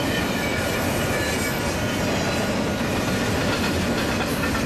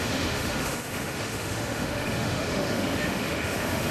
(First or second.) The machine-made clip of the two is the second